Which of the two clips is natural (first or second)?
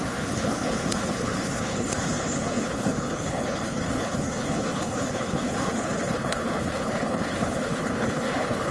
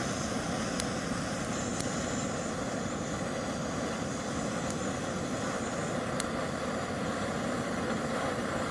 second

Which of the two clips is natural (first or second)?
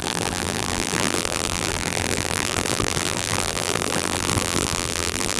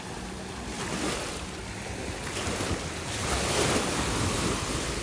second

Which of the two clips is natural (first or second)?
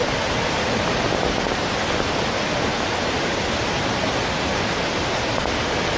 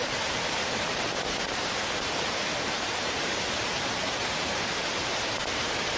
first